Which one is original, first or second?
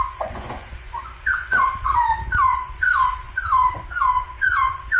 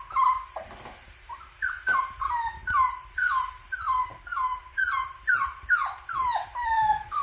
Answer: second